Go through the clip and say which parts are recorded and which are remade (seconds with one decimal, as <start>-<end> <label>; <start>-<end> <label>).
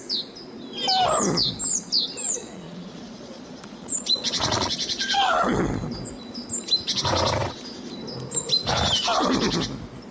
0.0-2.4 recorded; 2.4-5.3 remade; 5.3-10.1 recorded